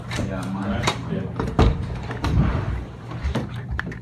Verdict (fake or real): fake